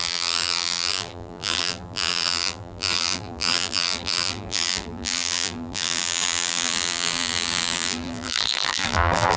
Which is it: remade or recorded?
remade